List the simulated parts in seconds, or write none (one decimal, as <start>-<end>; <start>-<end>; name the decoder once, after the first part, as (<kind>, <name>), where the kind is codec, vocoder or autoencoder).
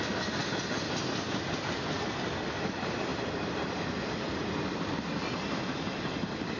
none